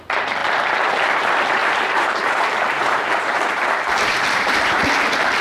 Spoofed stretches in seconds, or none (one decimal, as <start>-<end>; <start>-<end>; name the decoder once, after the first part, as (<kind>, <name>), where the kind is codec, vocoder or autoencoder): 1.6-4.8 (vocoder, BigVGAN v2)